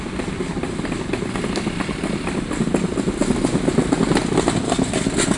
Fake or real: real